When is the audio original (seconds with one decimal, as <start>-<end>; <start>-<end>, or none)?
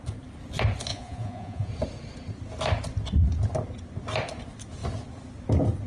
0.0-0.9; 1.7-5.9